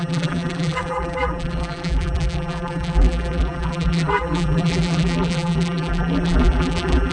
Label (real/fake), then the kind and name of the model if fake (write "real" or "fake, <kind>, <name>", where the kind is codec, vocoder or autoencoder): fake, vocoder, BigVGAN v2